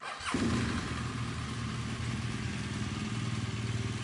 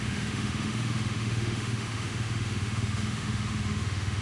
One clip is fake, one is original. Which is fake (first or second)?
second